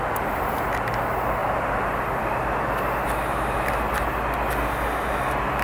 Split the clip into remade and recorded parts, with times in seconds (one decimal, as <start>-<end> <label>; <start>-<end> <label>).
0.0-1.4 recorded; 1.4-2.2 remade; 2.2-5.6 recorded